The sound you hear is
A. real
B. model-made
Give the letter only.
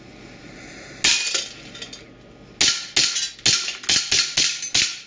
A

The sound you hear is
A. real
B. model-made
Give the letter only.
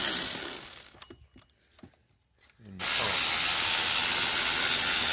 A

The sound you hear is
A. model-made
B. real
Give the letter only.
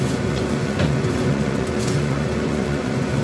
A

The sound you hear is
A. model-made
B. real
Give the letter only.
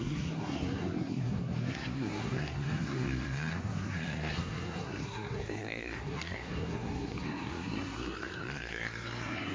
A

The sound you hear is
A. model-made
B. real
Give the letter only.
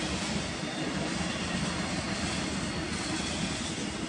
B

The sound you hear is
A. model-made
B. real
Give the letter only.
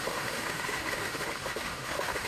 A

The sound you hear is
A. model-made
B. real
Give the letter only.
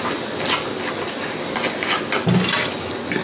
B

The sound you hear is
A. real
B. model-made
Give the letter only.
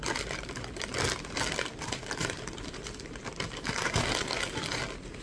A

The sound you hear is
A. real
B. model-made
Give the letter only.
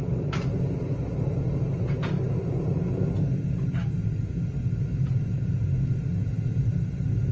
A